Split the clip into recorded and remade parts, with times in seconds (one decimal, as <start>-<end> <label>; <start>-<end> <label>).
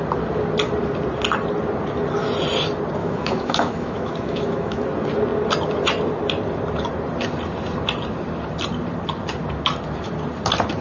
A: 0.0-3.0 recorded; 3.0-4.8 remade; 4.8-10.8 recorded